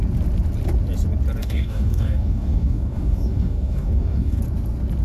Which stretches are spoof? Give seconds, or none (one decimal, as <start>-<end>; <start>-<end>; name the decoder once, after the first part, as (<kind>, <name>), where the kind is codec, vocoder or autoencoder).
1.4-4.4 (codec, DAC)